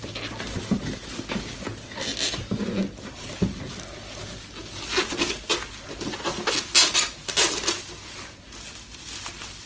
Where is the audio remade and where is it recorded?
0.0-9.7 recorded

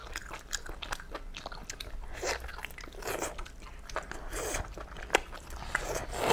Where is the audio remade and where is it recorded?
0.0-6.3 recorded

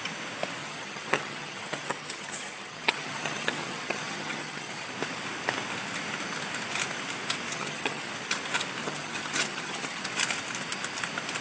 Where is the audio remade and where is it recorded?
0.0-0.6 recorded; 0.6-4.9 remade; 4.9-7.5 recorded; 7.5-8.1 remade; 8.1-8.8 recorded; 8.8-10.0 remade; 10.0-11.4 recorded

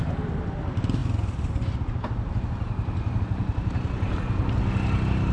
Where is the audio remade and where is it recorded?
0.0-5.3 recorded

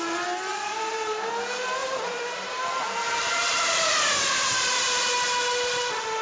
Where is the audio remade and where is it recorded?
0.0-0.5 recorded; 0.5-1.3 remade; 1.3-1.8 recorded; 1.8-5.1 remade; 5.1-6.2 recorded

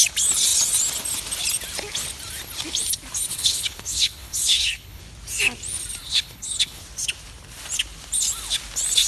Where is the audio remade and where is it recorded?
0.0-3.3 recorded; 3.3-5.0 remade; 5.0-6.0 recorded; 6.0-6.8 remade; 6.8-9.1 recorded

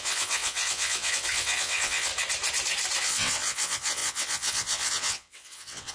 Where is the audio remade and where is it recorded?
0.0-2.1 remade; 2.1-3.0 recorded; 3.0-5.9 remade

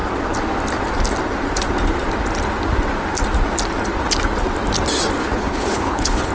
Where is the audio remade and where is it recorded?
0.0-5.2 recorded; 5.2-6.3 remade